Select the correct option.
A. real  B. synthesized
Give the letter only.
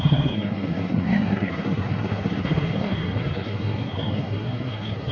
B